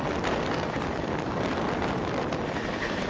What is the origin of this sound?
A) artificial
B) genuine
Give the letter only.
B